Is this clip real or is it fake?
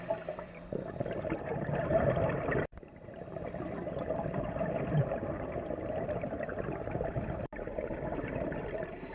fake